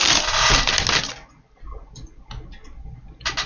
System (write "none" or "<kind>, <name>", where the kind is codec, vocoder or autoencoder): none